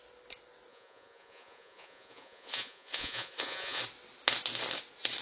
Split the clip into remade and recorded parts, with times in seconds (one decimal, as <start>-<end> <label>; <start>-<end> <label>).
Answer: 0.0-0.7 recorded; 0.7-3.8 remade; 3.8-5.2 recorded

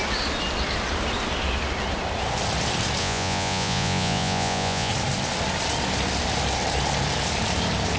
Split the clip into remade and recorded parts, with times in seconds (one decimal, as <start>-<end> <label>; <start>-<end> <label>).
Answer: 0.0-3.0 recorded; 3.0-4.9 remade; 4.9-8.0 recorded

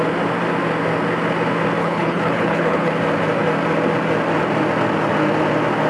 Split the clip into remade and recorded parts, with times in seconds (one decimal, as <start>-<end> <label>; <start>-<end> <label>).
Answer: 0.0-1.8 recorded; 1.8-2.9 remade; 2.9-5.9 recorded